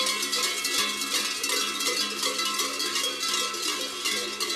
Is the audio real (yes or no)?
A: yes